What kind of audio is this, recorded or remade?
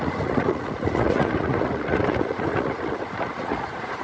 remade